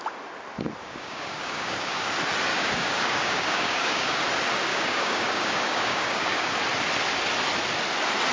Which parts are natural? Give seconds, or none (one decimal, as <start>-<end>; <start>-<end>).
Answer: 0.0-0.8; 2.1-2.5; 4.2-4.7; 6.6-8.3